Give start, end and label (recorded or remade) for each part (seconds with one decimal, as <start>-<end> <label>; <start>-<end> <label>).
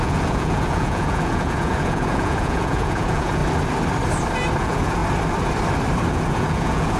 0.0-3.4 remade; 3.4-4.6 recorded; 4.6-5.0 remade; 5.0-6.1 recorded; 6.1-7.0 remade